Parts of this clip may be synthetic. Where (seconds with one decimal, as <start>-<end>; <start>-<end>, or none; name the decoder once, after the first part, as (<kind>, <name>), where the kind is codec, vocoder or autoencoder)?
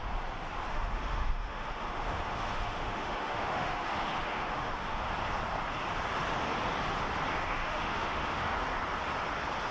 0.7-5.0 (autoencoder, DAC-VAE); 7.6-8.5